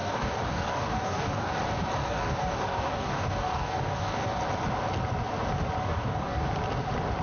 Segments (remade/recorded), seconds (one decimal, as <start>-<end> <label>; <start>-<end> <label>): 0.0-1.5 remade; 1.5-2.0 recorded; 2.0-4.4 remade; 4.4-5.8 recorded; 5.8-6.5 remade; 6.5-7.2 recorded